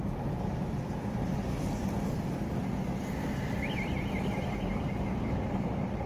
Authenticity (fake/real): real